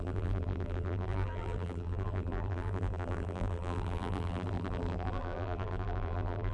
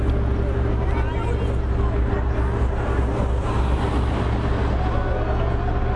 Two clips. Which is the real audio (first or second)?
second